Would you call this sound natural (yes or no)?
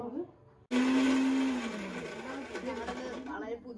yes